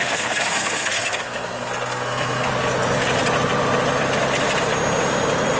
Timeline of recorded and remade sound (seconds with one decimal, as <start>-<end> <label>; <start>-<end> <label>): 0.0-2.5 remade; 2.5-5.6 recorded